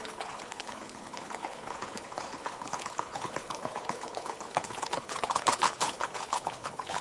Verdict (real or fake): fake